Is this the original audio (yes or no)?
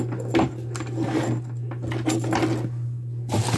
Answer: yes